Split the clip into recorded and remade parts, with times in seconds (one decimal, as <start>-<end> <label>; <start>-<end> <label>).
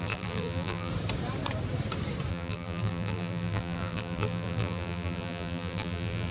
0.0-0.9 remade; 0.9-2.3 recorded; 2.3-6.3 remade